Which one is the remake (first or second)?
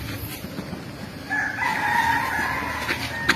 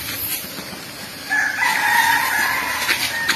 second